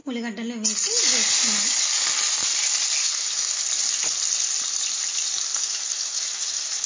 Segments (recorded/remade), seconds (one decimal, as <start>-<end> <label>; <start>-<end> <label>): 0.0-3.0 recorded; 3.0-3.6 remade; 3.6-5.6 recorded; 5.6-6.9 remade